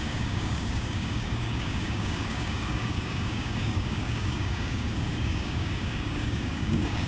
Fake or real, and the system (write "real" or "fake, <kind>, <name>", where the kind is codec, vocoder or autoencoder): fake, codec, DAC